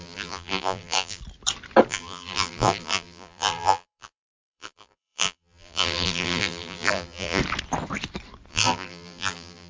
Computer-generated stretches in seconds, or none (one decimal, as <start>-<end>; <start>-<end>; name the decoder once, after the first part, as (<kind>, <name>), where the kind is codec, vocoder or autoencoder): 0.0-1.2 (vocoder, BigVGAN v2); 1.9-7.4; 8.5-9.7